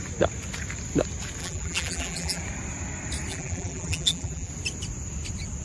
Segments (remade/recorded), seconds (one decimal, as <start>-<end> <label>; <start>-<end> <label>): 0.0-1.4 recorded; 1.4-2.4 remade; 2.4-3.3 recorded; 3.3-4.5 remade; 4.5-5.6 recorded